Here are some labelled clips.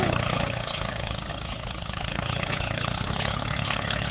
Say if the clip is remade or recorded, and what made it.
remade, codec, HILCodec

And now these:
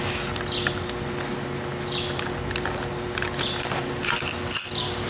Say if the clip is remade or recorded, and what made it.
recorded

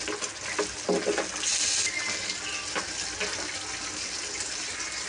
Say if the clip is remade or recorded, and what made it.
recorded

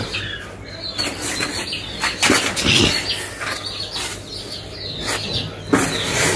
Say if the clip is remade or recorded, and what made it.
recorded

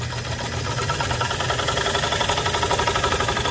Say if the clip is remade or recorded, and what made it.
recorded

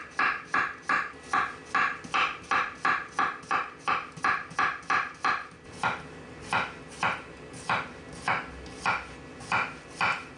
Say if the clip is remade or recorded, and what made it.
recorded